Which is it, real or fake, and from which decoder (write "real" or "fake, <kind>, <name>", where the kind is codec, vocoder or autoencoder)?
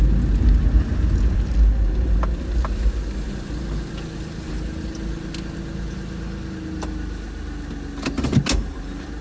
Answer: real